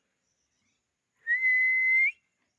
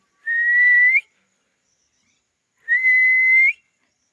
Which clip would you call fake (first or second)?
second